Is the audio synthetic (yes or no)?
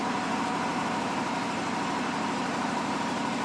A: yes